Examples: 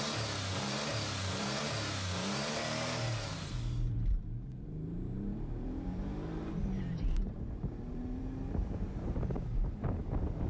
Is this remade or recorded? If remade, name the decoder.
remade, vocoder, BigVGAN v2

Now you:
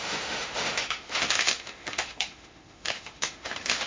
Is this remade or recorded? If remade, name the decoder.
remade, autoencoder, DAC-VAE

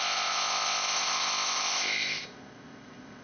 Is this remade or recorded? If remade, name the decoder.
remade, codec, ZipCodec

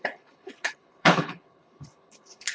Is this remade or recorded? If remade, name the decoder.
remade, codec, HILCodec